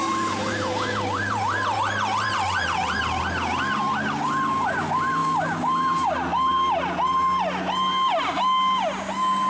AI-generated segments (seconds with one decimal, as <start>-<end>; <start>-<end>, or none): 0.0-3.2